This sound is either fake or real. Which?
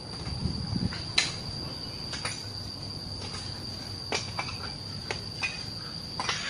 real